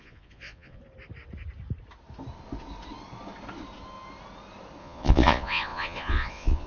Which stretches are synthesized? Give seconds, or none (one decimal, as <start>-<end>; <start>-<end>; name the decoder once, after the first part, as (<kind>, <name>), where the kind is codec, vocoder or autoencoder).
0.0-0.8 (vocoder, Vocos); 4.8-6.7